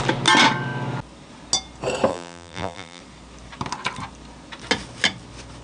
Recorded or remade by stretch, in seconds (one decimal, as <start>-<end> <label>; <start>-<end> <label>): 0.0-2.1 recorded; 2.1-3.0 remade; 3.0-5.6 recorded